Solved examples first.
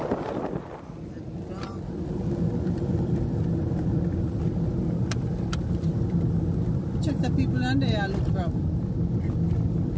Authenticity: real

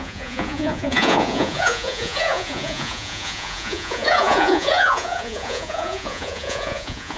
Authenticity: fake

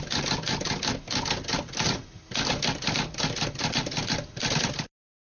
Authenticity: real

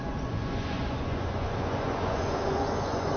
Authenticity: fake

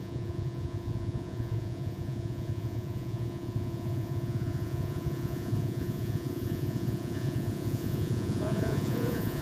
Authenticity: fake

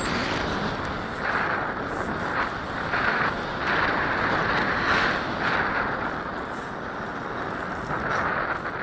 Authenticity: real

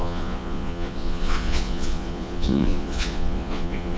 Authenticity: fake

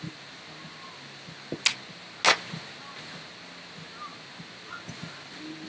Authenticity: real